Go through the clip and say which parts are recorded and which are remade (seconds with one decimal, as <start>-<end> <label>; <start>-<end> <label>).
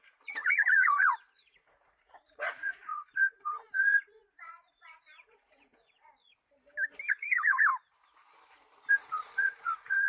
0.0-6.3 remade; 6.3-7.1 recorded; 7.1-7.7 remade; 7.7-8.9 recorded; 8.9-10.1 remade